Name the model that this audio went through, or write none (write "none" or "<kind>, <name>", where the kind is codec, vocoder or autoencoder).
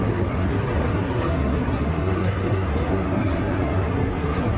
codec, SNAC